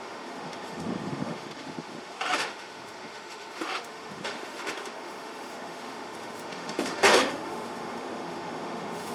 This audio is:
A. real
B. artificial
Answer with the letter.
B